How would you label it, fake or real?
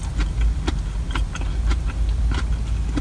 real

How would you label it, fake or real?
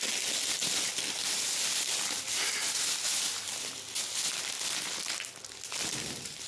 real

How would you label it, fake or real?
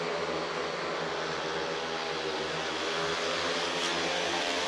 real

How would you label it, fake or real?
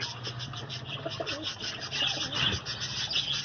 real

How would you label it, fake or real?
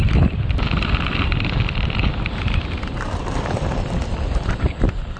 fake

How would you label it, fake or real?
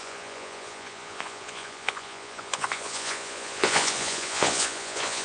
fake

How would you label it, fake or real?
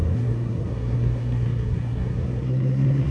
fake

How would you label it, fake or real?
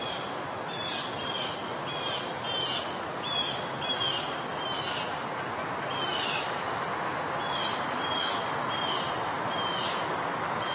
real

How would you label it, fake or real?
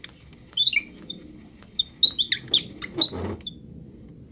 real